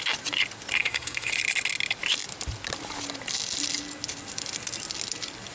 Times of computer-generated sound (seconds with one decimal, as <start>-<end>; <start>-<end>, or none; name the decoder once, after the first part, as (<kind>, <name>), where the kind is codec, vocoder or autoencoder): 0.8-1.3 (codec, SNAC)